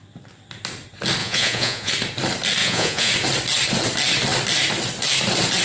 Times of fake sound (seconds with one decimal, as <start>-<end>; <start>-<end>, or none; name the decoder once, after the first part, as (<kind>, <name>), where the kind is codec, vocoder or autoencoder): 1.2-1.9 (vocoder, Vocos); 2.6-3.1